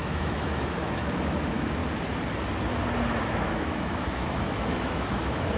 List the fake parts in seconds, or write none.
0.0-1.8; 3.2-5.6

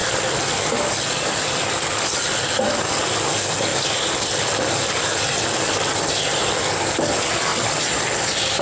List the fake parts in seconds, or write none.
none

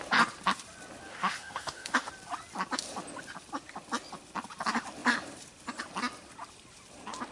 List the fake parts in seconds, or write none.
1.1-2.1

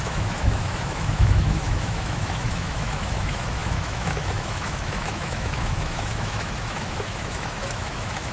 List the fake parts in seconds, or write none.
0.0-8.3

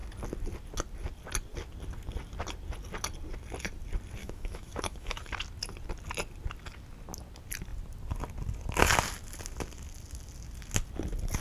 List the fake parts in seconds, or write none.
4.2-5.2